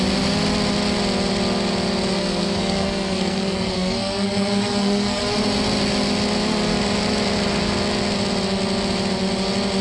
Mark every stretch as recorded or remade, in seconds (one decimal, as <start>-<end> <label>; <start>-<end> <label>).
0.0-2.2 recorded; 2.2-5.2 remade; 5.2-9.8 recorded